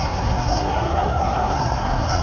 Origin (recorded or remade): remade